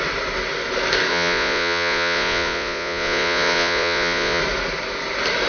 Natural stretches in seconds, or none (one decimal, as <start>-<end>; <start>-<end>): 0.0-1.1; 4.4-5.5